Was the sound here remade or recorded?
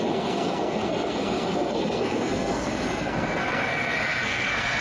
remade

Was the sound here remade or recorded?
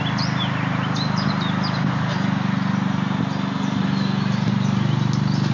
recorded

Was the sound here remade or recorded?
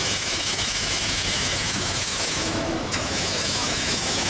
remade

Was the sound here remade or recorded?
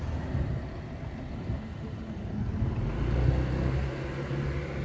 recorded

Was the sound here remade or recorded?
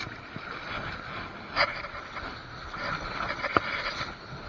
recorded